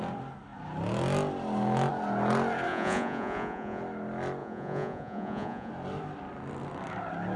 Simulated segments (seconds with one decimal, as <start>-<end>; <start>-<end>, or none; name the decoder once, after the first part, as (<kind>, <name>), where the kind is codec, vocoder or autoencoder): 2.7-3.8 (vocoder, Vocos); 4.4-5.7